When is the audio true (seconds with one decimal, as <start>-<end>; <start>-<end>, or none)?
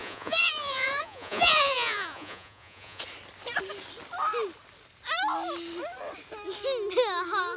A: 3.0-7.6